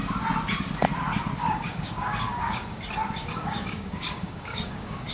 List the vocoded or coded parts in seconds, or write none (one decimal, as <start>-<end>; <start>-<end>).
1.4-2.8; 3.2-5.1